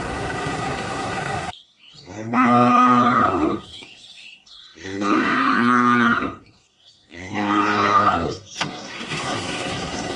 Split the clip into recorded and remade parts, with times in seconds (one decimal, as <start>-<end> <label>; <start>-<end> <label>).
0.0-10.2 remade